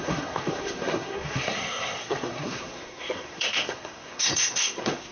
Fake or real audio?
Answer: fake